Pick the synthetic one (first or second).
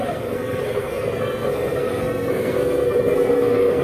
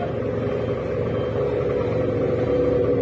first